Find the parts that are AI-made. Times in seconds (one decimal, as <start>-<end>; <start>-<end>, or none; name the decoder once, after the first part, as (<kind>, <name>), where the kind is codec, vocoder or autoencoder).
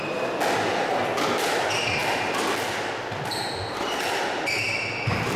none